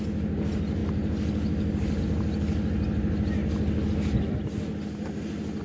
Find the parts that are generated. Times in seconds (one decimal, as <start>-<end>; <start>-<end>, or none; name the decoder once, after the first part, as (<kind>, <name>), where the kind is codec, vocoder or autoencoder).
none